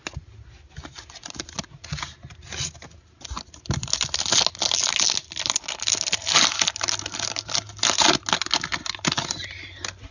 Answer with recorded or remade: recorded